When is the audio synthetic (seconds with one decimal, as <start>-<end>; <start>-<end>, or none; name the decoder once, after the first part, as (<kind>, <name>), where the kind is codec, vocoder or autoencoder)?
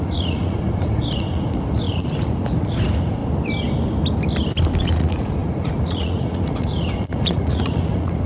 0.0-3.2 (vocoder, Vocos); 4.8-8.3